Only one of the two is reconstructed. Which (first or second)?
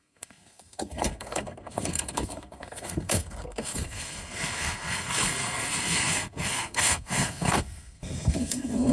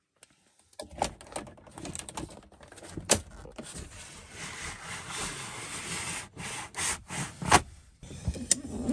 first